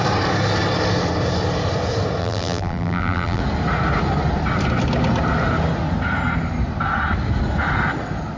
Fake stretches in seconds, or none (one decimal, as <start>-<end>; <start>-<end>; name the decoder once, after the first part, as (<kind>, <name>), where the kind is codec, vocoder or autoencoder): 2.2-3.4 (vocoder, BigVGAN v2)